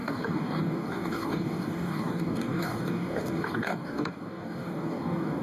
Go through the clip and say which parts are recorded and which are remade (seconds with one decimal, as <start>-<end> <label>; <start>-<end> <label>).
0.0-5.4 remade